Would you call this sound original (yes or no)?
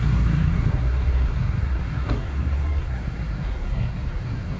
no